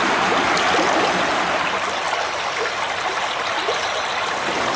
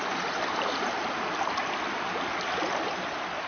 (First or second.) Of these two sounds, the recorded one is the first